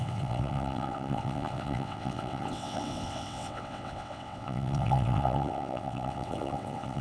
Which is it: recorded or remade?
remade